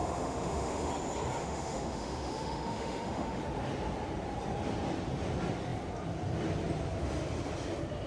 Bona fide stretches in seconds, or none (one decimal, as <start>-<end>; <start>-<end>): 0.9-1.4; 3.4-8.1